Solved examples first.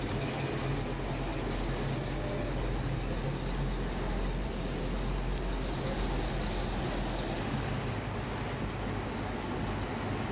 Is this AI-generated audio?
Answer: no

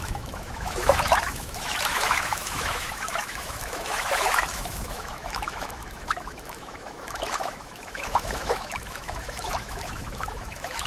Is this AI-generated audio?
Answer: yes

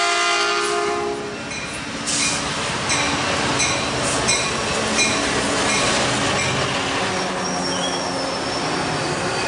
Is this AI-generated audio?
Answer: no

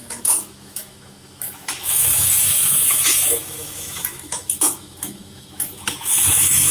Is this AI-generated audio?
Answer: yes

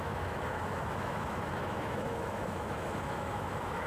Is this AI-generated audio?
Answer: yes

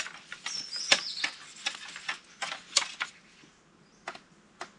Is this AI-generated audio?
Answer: no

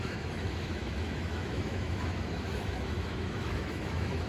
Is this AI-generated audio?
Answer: yes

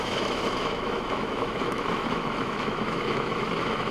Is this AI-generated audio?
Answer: yes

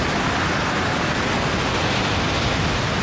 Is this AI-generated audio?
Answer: no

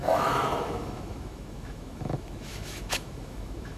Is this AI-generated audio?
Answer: yes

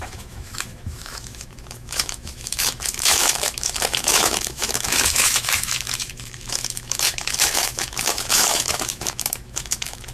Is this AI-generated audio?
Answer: yes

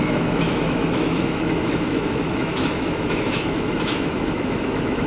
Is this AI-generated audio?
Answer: yes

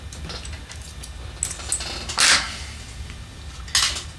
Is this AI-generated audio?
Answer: no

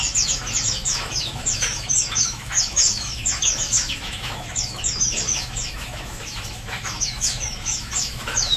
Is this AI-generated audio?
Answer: yes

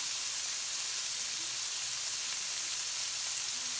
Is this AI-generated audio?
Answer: no